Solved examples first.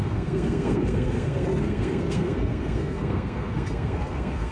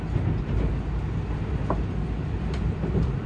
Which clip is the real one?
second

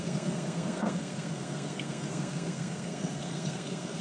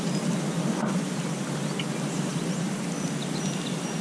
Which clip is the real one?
second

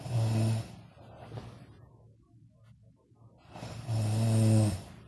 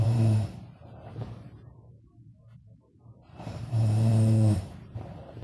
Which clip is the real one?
first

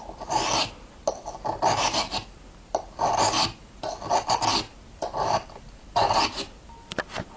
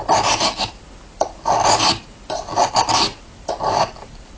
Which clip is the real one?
first